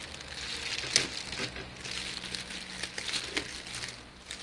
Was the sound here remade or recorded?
recorded